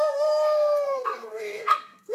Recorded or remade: remade